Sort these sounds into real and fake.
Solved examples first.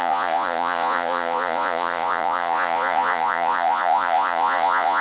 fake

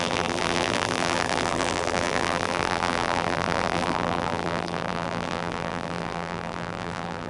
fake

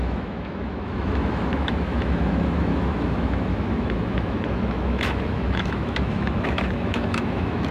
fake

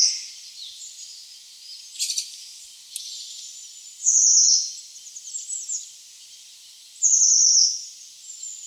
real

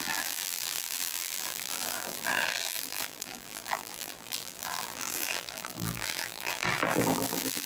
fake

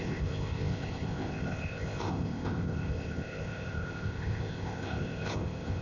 fake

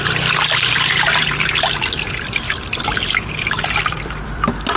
fake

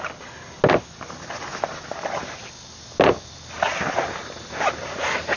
real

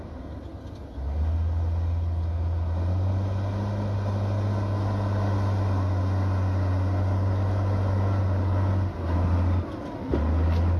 real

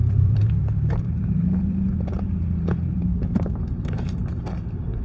fake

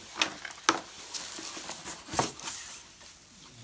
real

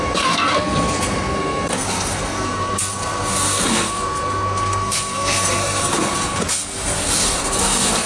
fake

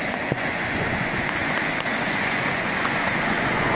fake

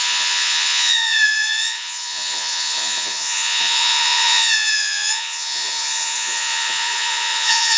fake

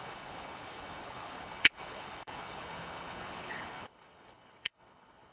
fake